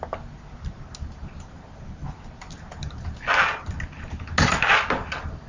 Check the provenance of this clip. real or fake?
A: real